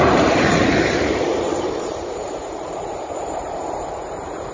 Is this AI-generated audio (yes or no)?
yes